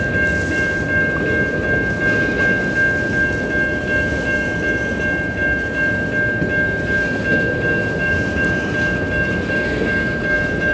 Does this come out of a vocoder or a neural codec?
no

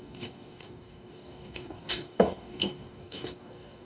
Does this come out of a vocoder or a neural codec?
yes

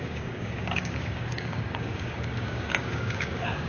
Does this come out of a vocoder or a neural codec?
yes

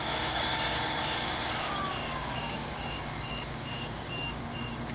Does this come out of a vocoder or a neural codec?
yes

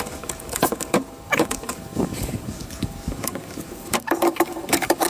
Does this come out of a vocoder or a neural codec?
yes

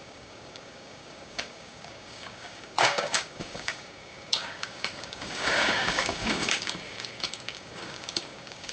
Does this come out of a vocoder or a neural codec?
yes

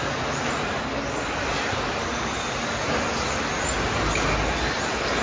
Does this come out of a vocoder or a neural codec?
no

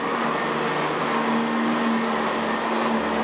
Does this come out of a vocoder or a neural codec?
no